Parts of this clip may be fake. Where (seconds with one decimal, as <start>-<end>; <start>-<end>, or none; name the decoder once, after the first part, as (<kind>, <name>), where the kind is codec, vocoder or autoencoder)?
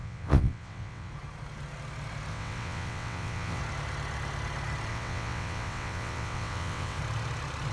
0.0-1.1 (vocoder, WaveNeXt); 2.3-3.6; 4.9-7.0